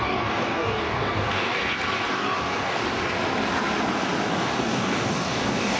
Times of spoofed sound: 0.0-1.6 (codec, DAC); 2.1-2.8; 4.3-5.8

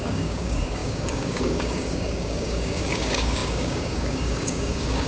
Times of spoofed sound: 0.0-5.1 (codec, DAC)

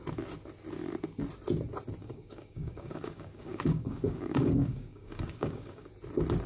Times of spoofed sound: 2.0-5.9 (codec, DAC)

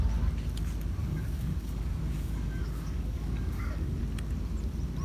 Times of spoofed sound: 1.0-4.0 (codec, DAC)